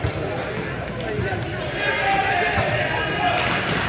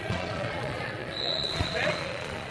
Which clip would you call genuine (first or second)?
first